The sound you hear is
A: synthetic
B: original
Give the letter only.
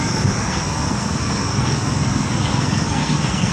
A